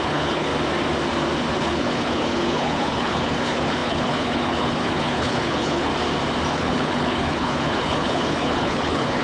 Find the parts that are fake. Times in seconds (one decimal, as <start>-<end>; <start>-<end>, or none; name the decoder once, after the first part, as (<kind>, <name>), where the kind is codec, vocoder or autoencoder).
0.0-0.5 (codec, HILCodec); 1.5-5.9; 6.5-9.2